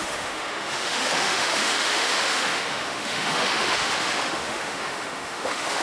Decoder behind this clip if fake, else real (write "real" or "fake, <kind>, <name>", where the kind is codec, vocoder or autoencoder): fake, autoencoder, DAC-VAE